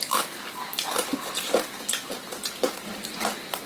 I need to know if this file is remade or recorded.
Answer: recorded